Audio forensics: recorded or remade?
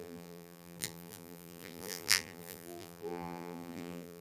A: remade